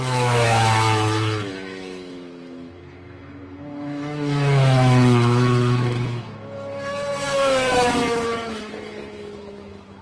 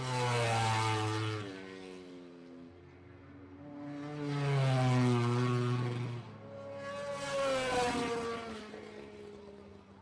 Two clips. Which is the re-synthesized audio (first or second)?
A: first